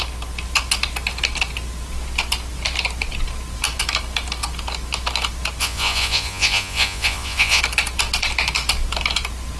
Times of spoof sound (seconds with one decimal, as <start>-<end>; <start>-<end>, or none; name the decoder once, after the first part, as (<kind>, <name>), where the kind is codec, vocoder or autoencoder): 5.6-7.6 (vocoder, Vocos)